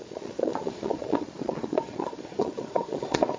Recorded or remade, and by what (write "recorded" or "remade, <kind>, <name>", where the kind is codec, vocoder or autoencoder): remade, vocoder, Vocos